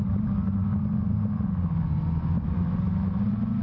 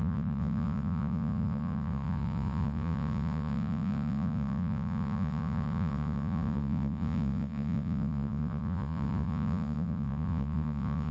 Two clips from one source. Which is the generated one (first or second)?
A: second